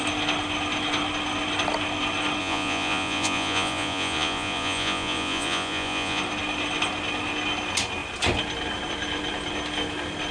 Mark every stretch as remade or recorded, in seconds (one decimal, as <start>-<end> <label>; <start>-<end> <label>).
0.0-2.4 recorded; 2.4-6.2 remade; 6.2-10.3 recorded